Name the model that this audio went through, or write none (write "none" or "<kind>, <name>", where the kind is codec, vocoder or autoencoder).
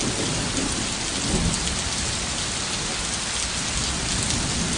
none